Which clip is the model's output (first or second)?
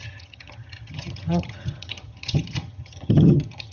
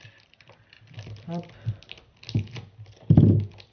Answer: first